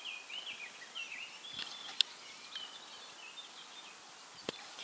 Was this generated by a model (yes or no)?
no